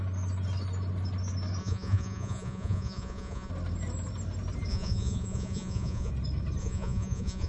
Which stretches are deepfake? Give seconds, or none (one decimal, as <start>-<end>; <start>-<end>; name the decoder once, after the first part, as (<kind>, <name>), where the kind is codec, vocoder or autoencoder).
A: 1.6-3.5 (vocoder, Vocos); 4.7-6.1; 6.6-7.5